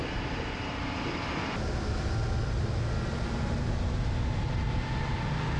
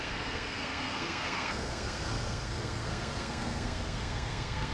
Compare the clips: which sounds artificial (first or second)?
second